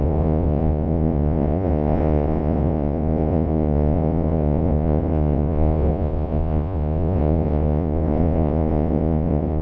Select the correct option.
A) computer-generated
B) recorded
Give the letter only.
A